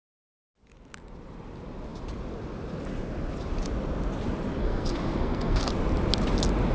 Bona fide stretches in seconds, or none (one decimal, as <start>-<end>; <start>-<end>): 0.0-4.6; 5.7-6.7

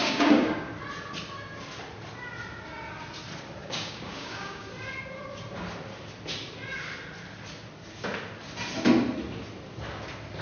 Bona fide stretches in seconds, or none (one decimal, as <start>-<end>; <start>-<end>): 0.7-3.6; 4.7-10.4

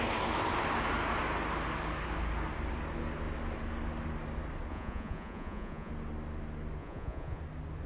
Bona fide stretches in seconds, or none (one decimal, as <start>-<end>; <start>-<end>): 0.0-4.7; 5.9-6.8; 7.4-7.9

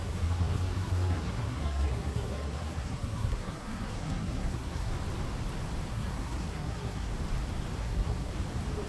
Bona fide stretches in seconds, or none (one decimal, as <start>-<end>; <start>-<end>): 4.9-5.9; 7.1-7.8; 8.3-8.9

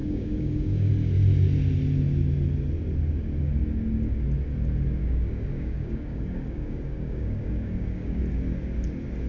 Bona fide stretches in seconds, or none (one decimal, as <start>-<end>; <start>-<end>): 0.9-5.0; 8.2-9.3

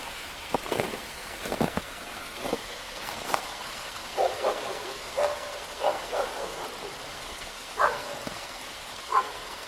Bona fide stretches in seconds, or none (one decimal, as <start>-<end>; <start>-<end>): 6.6-7.1

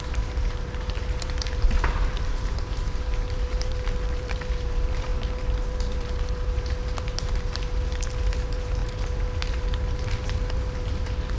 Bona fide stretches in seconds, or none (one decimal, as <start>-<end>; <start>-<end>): none

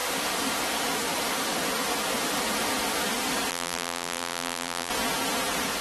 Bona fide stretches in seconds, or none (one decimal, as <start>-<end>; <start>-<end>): 0.0-3.5; 4.9-5.8